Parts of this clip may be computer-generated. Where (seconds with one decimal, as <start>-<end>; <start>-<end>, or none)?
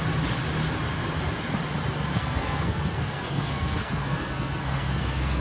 2.1-5.4